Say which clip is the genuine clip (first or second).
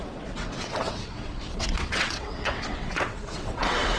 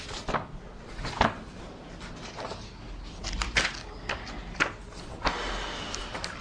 second